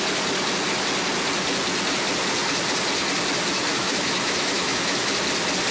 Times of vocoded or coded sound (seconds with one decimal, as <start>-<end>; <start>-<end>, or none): 3.7-5.1